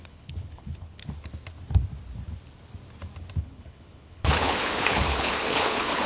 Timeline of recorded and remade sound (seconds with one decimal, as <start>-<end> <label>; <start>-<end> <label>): 0.0-1.0 remade; 1.0-3.4 recorded; 3.4-6.1 remade